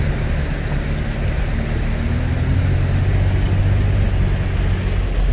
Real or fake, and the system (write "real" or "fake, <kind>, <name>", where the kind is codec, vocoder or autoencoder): real